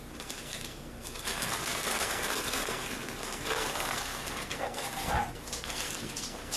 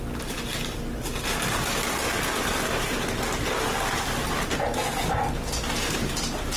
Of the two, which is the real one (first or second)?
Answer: second